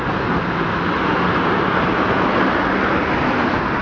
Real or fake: real